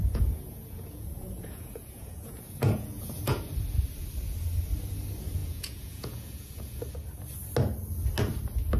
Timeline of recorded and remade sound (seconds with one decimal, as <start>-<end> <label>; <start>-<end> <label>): 0.0-3.4 remade; 3.4-5.4 recorded; 5.4-6.8 remade; 6.8-8.8 recorded